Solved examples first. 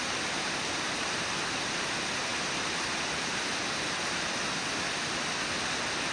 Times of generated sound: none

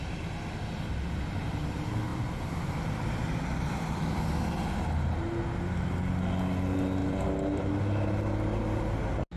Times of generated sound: 2.1-4.2 (vocoder, BigVGAN v2); 7.0-7.7

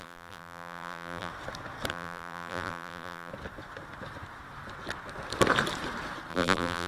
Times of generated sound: 0.0-1.3 (vocoder, BigVGAN v2); 1.9-3.3; 6.3-6.9

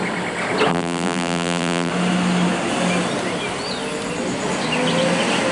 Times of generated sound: 0.7-1.9 (vocoder, BigVGAN v2)

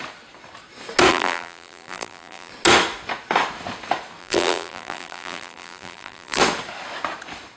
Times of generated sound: 1.1-2.5 (vocoder, BigVGAN v2); 4.2-6.4

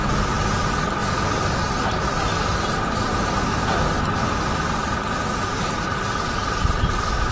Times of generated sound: 0.0-1.0 (vocoder, BigVGAN v2); 1.6-3.5; 5.6-7.3

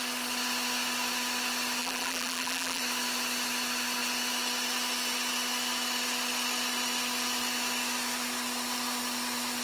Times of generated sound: 1.8-2.8 (vocoder, BigVGAN v2)